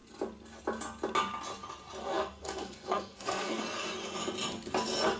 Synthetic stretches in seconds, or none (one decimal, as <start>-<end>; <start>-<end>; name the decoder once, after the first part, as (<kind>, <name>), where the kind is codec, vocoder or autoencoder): 2.0-3.6 (codec, SNAC)